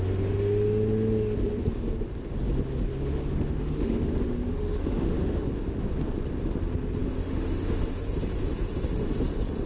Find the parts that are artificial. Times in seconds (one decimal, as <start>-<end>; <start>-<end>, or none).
2.9-5.9; 7.0-7.9